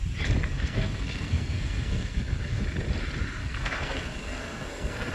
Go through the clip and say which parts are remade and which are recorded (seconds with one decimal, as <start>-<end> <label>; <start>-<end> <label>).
0.0-0.5 recorded; 0.5-2.6 remade; 2.6-3.4 recorded; 3.4-5.1 remade